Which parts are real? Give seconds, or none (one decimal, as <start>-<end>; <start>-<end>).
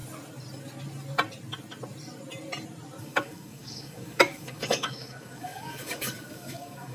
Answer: 0.0-3.0